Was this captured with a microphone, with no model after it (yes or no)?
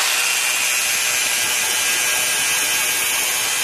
yes